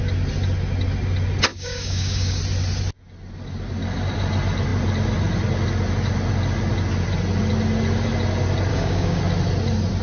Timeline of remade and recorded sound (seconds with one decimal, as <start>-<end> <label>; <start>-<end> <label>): 0.0-1.5 recorded; 1.5-2.4 remade; 2.4-8.7 recorded; 8.7-9.2 remade; 9.2-10.0 recorded